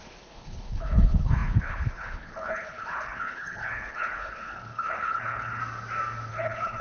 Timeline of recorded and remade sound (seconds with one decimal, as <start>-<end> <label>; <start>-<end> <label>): 0.0-5.6 remade; 5.6-6.3 recorded; 6.3-6.8 remade